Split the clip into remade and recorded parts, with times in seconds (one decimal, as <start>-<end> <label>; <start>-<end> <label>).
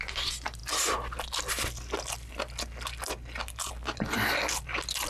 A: 0.0-5.1 recorded